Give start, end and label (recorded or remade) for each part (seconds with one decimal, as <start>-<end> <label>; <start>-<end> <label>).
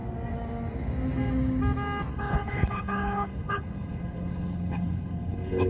0.0-2.1 recorded; 2.1-5.7 remade